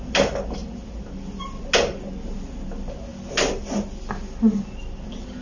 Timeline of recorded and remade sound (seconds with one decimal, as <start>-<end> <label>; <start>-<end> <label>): 0.0-5.4 recorded